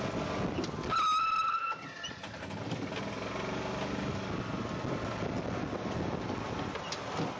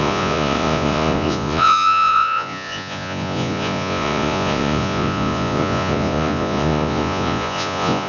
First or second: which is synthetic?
second